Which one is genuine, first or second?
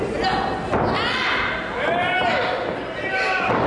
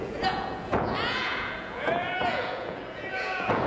first